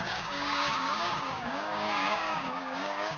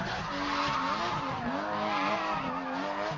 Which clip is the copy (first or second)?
first